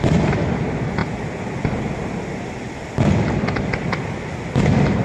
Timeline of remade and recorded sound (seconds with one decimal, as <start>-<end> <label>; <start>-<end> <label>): 0.0-5.0 recorded

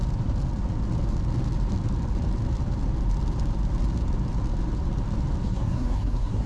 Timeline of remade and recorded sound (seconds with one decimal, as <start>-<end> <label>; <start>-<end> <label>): 0.0-5.4 recorded; 5.4-6.5 remade

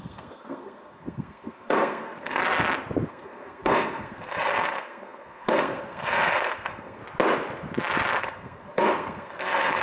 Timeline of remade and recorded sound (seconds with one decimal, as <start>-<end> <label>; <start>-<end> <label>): 0.0-2.4 remade; 2.4-3.1 recorded; 3.1-7.0 remade; 7.0-8.2 recorded; 8.2-9.8 remade

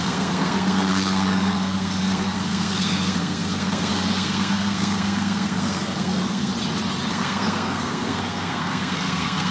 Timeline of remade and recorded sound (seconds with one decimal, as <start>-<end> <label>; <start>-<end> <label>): 0.0-6.5 remade; 6.5-7.1 recorded; 7.1-9.5 remade

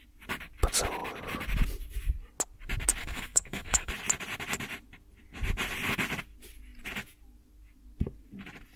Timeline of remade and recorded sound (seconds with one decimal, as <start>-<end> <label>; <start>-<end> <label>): 0.0-3.0 recorded; 3.0-3.9 remade; 3.9-8.8 recorded

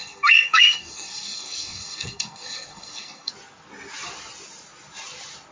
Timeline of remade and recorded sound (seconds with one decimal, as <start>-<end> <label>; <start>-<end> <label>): 0.0-3.3 remade; 3.3-5.5 recorded

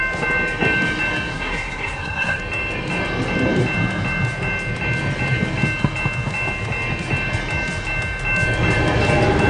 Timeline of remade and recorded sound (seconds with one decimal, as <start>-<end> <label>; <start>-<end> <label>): 0.0-1.3 recorded; 1.3-2.4 remade; 2.4-9.5 recorded

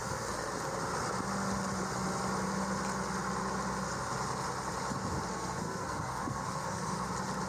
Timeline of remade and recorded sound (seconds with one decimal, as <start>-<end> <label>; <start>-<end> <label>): 0.0-0.5 remade; 0.5-5.3 recorded; 5.3-7.1 remade; 7.1-7.5 recorded